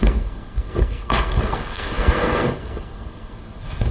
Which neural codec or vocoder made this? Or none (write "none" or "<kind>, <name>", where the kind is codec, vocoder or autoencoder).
codec, SNAC